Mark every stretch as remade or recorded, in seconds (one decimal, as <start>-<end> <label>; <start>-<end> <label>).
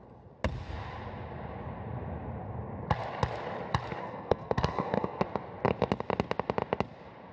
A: 0.0-4.0 recorded; 4.0-5.2 remade; 5.2-7.3 recorded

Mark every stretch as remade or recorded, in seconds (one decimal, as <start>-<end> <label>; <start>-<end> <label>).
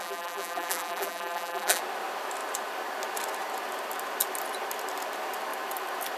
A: 0.0-1.8 remade; 1.8-6.2 recorded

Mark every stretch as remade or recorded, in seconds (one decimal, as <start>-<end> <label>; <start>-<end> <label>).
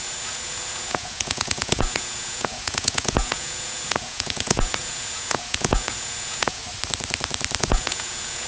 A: 0.0-6.6 remade; 6.6-7.6 recorded; 7.6-8.5 remade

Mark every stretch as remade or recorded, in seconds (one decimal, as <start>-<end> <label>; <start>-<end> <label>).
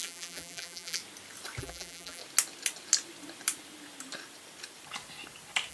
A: 0.0-1.0 remade; 1.0-1.6 recorded; 1.6-2.2 remade; 2.2-5.7 recorded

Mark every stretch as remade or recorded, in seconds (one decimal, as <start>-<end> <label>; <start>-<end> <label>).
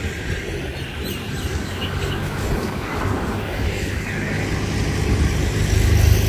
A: 0.0-1.5 recorded; 1.5-4.4 remade; 4.4-6.3 recorded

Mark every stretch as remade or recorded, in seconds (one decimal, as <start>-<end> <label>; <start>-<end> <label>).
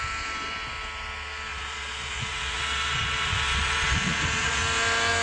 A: 0.0-1.5 recorded; 1.5-4.6 remade; 4.6-5.2 recorded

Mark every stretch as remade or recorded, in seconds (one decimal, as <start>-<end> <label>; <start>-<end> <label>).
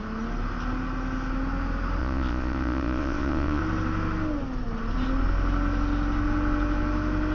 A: 0.0-2.0 recorded; 2.0-3.6 remade; 3.6-7.3 recorded